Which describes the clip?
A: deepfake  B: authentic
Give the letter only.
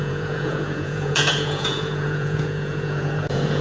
A